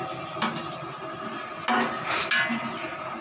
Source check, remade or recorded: recorded